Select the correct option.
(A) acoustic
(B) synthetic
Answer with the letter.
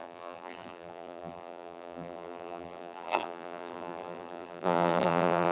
B